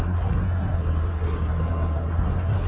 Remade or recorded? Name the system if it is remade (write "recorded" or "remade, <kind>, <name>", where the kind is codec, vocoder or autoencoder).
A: remade, codec, SNAC